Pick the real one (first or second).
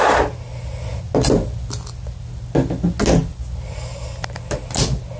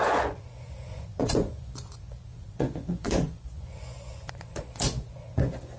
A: first